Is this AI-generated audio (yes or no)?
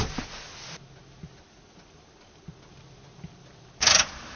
no